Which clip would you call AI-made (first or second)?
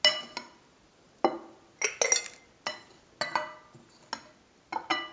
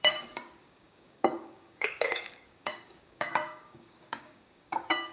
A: second